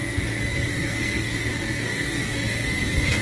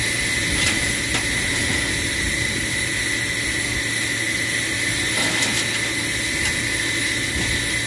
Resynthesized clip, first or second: first